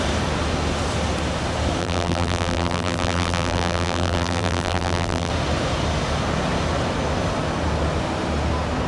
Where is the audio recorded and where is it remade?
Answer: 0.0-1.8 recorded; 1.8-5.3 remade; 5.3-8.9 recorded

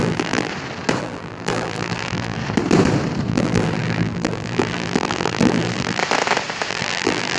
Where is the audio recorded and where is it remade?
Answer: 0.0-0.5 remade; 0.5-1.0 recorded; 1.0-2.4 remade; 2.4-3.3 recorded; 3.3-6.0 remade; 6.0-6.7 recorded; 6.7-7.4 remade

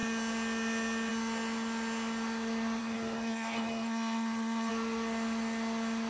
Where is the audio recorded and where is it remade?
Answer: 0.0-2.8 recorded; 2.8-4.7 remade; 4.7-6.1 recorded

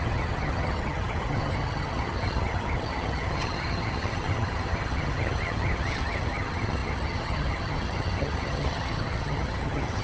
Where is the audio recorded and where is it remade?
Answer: 0.0-10.0 remade

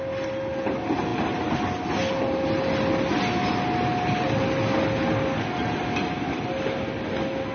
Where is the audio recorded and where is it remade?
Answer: 0.0-7.5 recorded